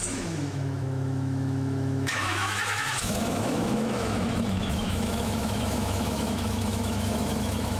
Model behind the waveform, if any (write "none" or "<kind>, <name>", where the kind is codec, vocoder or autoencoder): autoencoder, DAC-VAE